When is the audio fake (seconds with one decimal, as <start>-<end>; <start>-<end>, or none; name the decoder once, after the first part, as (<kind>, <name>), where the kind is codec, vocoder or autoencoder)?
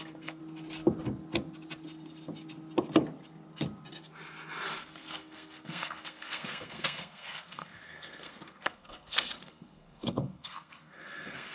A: 0.0-0.4 (codec, SNAC); 4.8-11.5